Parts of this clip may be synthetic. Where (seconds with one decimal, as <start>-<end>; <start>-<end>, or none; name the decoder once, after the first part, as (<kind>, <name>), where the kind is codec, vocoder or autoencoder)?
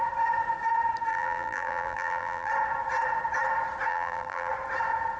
1.1-2.5 (vocoder, BigVGAN v2); 3.9-4.5